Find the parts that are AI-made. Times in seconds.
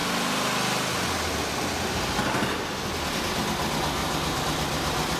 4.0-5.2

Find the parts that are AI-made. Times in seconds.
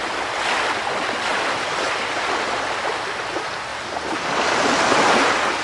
1.3-1.9; 3.7-4.3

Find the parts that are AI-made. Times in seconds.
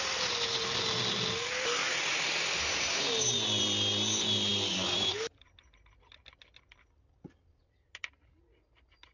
4.5-5.5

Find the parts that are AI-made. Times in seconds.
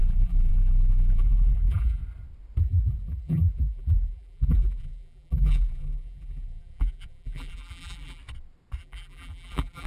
0.0-2.0; 2.6-8.2; 8.8-9.9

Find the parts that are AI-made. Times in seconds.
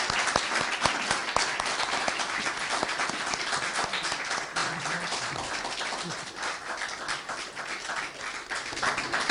4.6-6.3